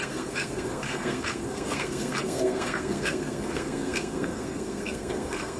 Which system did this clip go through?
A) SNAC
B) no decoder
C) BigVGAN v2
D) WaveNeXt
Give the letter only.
A